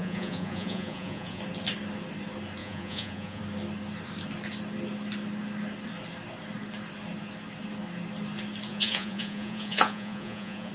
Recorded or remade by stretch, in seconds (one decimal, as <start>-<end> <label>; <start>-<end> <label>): 0.0-1.4 remade; 1.4-2.6 recorded; 2.6-3.4 remade; 3.4-8.7 recorded; 8.7-10.7 remade